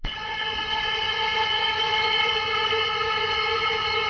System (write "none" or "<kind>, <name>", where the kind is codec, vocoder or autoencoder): vocoder, Vocos